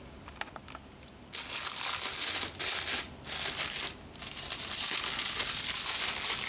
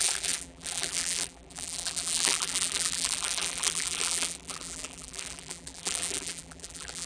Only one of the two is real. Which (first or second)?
first